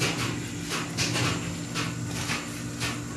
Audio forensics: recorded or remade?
recorded